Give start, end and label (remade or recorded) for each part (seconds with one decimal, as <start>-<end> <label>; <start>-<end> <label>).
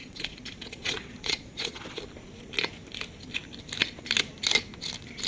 0.0-2.0 remade; 2.0-5.3 recorded